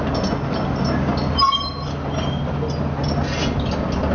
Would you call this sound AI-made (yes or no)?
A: no